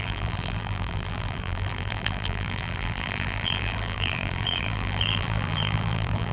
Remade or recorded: remade